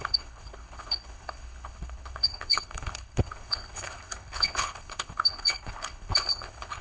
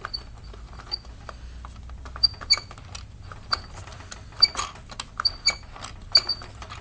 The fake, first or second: first